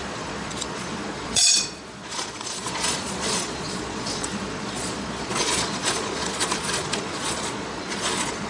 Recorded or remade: remade